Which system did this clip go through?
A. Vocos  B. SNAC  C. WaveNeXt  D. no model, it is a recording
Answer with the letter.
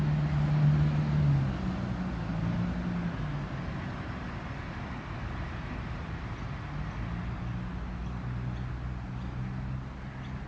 D